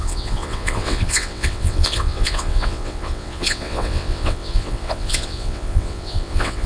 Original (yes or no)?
no